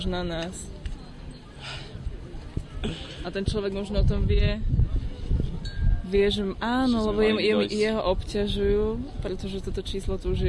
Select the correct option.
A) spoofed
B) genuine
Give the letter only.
B